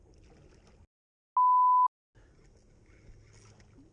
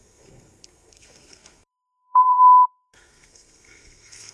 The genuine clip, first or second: first